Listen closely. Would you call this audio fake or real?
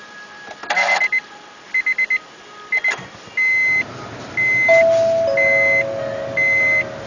real